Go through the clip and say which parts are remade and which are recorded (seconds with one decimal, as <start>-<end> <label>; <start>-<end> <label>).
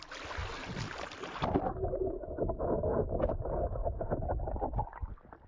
0.0-2.9 recorded; 2.9-3.4 remade; 3.4-3.8 recorded; 3.8-4.5 remade; 4.5-5.5 recorded